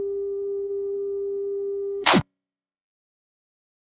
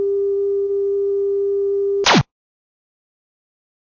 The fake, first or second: first